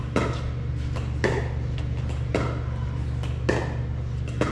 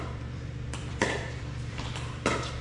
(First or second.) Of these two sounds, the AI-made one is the second